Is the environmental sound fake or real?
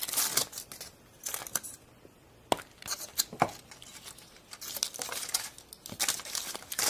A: real